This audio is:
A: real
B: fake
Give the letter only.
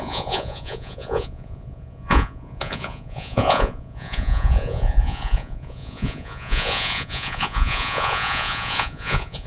B